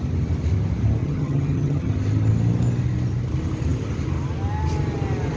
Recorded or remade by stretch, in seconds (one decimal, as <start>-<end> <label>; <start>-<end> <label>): 0.0-1.0 recorded; 1.0-1.9 remade; 1.9-5.4 recorded